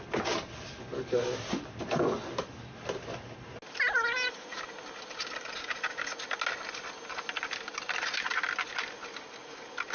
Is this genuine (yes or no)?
yes